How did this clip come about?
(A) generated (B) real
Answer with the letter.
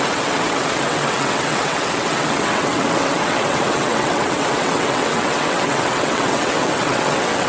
A